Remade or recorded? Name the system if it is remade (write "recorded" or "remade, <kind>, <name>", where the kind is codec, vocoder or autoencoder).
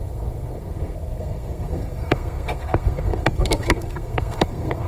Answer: remade, codec, SNAC